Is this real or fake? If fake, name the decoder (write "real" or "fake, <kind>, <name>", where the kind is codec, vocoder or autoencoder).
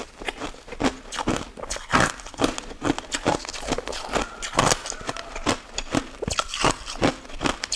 real